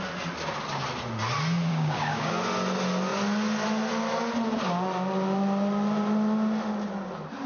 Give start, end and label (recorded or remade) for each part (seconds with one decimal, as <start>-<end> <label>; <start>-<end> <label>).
0.0-1.7 recorded; 1.7-2.3 remade; 2.3-7.5 recorded